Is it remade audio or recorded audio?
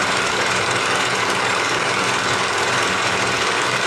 remade